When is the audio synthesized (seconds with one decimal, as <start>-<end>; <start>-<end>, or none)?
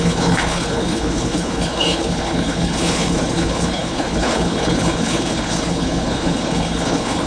0.0-7.3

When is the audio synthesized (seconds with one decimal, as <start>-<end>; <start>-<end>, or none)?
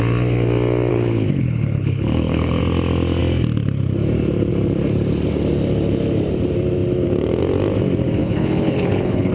0.9-2.6; 8.2-9.3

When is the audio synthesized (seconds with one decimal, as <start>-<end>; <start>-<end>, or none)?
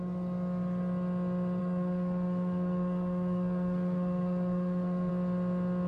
1.6-5.1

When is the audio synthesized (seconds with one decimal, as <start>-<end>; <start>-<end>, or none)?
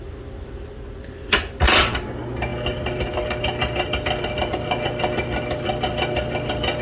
none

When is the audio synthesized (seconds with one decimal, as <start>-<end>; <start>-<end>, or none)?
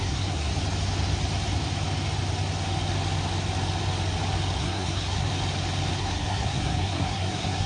0.0-0.5; 4.6-5.3; 6.0-7.7